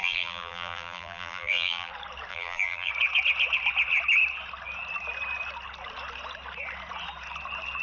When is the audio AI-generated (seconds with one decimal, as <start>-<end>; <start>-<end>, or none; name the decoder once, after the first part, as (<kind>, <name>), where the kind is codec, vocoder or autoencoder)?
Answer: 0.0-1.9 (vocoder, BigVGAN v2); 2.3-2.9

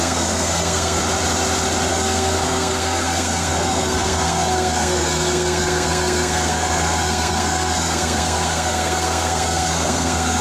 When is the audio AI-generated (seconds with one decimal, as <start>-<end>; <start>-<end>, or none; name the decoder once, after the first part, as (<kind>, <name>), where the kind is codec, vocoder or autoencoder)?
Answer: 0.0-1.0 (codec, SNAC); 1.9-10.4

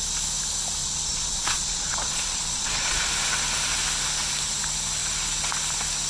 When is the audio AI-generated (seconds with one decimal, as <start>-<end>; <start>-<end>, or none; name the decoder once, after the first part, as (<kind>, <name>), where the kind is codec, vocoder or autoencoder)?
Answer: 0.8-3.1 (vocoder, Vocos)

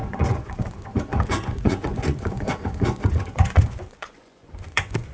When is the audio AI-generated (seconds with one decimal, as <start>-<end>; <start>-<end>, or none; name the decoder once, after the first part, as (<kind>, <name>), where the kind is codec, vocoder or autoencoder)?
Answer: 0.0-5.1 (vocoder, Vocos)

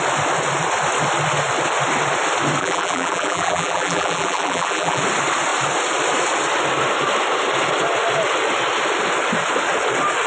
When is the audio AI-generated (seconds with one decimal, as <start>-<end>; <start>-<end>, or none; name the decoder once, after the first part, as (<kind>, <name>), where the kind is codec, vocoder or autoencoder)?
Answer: 2.6-5.0 (vocoder, BigVGAN v2)

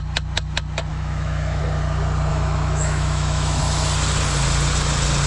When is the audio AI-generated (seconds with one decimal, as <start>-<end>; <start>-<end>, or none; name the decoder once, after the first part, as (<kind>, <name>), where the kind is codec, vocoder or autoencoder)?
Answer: 0.9-1.6 (autoencoder, DAC-VAE); 2.3-3.6